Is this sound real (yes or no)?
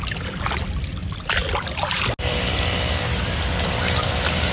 yes